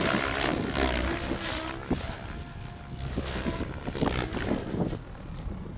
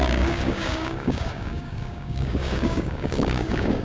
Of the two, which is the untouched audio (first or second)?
first